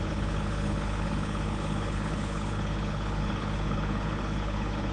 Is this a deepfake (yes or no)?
yes